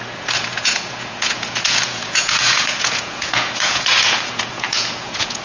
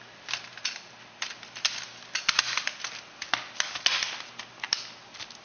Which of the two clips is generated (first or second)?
first